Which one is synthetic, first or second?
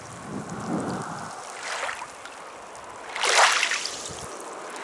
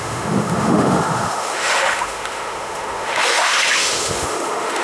second